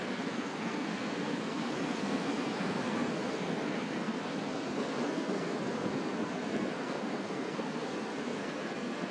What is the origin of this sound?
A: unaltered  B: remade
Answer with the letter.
B